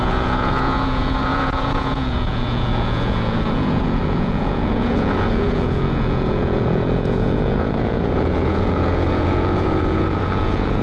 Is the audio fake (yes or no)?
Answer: yes